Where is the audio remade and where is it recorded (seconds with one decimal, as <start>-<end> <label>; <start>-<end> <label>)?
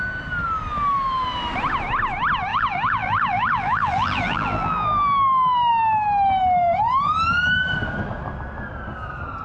0.0-2.5 recorded; 2.5-5.7 remade; 5.7-9.4 recorded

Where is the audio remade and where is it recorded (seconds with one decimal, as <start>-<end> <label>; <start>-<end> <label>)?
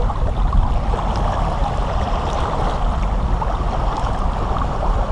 0.0-1.6 recorded; 1.6-2.6 remade; 2.6-5.1 recorded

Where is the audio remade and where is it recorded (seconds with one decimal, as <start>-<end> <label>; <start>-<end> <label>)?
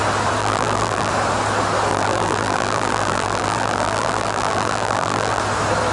0.0-0.4 recorded; 0.4-1.1 remade; 1.1-1.9 recorded; 1.9-5.4 remade; 5.4-5.9 recorded